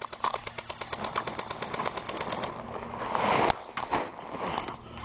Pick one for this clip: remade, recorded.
recorded